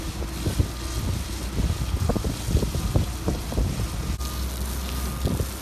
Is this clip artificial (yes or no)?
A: no